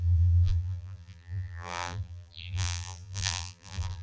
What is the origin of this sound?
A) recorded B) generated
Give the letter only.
B